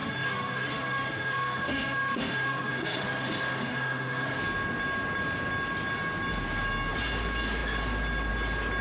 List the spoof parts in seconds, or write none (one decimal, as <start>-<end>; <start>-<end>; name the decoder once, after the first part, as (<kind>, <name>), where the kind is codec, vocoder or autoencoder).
0.0-4.4 (autoencoder, DAC-VAE)